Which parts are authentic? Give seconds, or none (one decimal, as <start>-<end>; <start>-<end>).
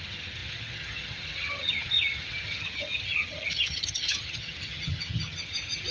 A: none